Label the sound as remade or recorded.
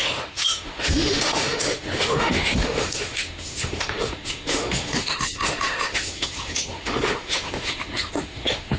remade